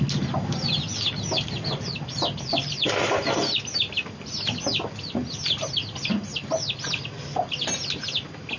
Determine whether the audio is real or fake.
real